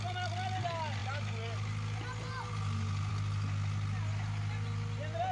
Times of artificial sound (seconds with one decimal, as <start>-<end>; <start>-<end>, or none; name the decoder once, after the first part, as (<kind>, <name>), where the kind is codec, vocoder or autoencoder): none